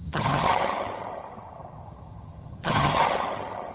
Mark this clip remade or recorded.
remade